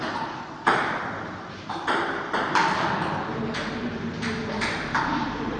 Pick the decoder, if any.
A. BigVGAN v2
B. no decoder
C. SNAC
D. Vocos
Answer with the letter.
A